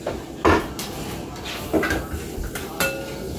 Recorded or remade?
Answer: recorded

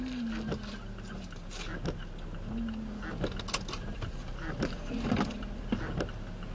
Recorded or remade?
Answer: recorded